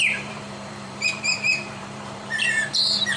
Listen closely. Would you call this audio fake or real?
fake